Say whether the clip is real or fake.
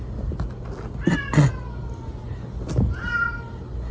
real